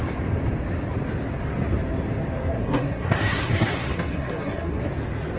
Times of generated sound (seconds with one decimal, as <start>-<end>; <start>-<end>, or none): 2.5-4.8